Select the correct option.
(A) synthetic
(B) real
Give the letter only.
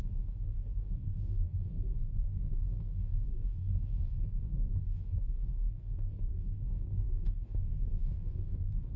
A